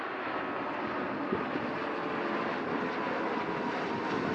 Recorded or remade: recorded